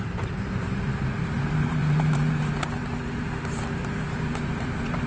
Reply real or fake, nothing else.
fake